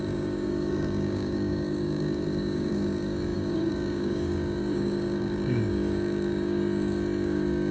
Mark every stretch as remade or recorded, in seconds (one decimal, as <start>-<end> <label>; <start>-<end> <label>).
0.0-7.7 remade